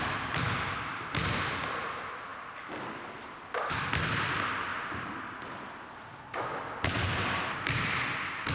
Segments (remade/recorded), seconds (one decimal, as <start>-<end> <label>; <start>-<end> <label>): 0.0-8.5 remade